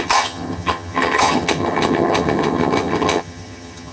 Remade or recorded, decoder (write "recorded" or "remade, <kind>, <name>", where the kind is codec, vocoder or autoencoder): remade, vocoder, HiFi-GAN